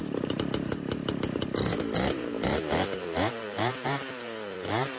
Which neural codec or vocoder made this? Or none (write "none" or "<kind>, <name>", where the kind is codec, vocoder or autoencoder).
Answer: vocoder, BigVGAN v2